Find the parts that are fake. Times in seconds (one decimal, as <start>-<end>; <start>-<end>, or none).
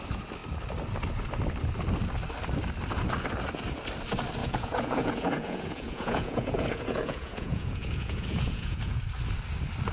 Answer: 4.4-9.0